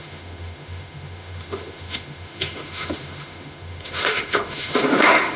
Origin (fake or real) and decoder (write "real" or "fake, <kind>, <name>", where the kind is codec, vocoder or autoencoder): fake, autoencoder, DAC-VAE